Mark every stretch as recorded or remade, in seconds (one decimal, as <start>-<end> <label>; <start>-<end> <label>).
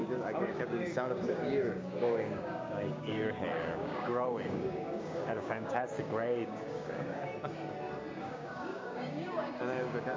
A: 0.0-7.3 remade; 7.3-8.2 recorded; 8.2-10.2 remade